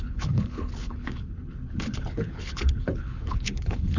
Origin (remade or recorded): remade